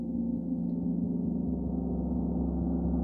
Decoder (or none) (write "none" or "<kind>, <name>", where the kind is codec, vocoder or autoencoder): none